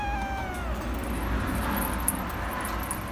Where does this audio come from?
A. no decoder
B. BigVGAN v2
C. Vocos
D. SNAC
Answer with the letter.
A